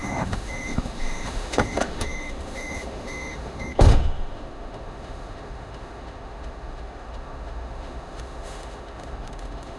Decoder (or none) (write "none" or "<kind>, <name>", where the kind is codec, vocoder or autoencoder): autoencoder, DAC-VAE